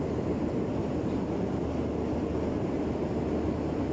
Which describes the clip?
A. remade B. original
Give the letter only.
B